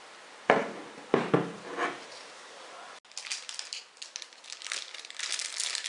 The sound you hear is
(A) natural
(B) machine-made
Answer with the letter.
A